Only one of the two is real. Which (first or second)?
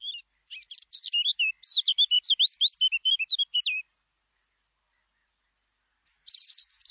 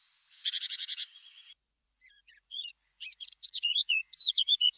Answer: first